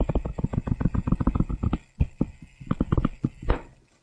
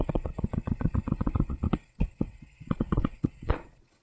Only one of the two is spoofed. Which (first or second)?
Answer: second